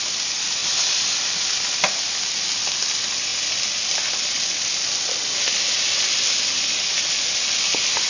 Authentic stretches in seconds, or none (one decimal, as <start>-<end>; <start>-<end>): 0.0-8.1